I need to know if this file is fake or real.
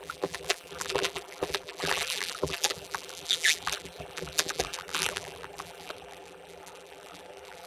fake